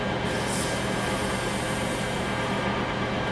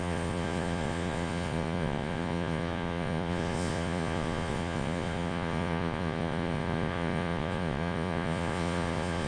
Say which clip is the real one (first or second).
first